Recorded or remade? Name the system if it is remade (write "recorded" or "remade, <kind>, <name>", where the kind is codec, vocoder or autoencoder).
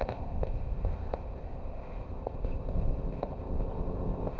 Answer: remade, codec, ZipCodec